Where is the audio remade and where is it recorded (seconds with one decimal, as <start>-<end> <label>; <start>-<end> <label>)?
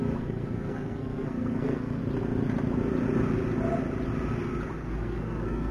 0.0-2.0 remade; 2.0-4.8 recorded; 4.8-5.7 remade